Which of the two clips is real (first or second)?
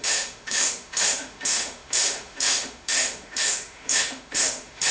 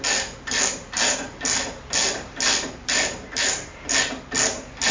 second